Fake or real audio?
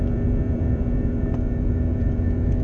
fake